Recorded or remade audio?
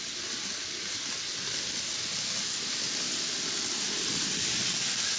recorded